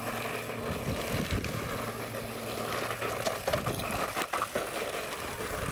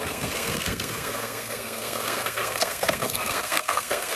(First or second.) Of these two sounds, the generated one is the second